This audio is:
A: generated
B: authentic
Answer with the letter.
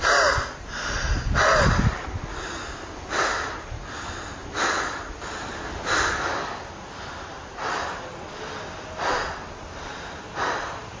B